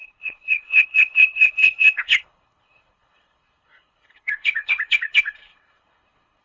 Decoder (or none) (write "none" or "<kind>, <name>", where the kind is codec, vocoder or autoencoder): codec, HILCodec